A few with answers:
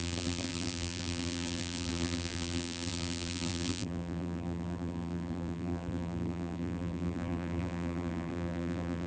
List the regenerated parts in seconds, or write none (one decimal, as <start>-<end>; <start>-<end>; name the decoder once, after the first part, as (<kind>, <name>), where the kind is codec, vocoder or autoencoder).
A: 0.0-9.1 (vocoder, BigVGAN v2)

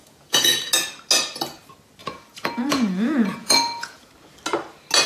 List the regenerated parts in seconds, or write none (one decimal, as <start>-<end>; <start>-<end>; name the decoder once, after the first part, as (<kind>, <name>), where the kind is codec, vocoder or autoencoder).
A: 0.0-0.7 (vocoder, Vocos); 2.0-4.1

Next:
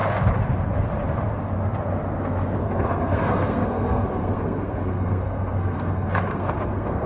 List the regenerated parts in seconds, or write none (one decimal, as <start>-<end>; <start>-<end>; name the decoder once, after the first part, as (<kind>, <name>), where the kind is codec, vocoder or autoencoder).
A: 2.6-7.1 (codec, SNAC)

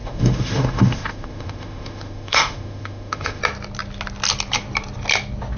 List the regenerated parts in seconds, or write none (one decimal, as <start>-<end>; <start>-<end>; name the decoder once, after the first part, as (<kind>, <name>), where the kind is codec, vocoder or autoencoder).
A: 0.0-3.4 (autoencoder, DAC-VAE)

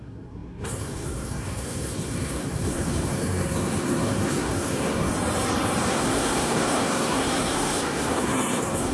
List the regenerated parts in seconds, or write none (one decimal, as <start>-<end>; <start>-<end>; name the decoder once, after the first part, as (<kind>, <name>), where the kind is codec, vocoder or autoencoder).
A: 0.0-5.1 (codec, SNAC); 5.9-8.9